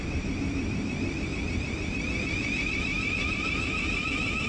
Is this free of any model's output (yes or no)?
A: no